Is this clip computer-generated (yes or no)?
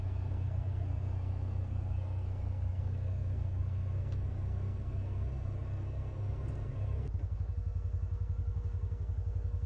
yes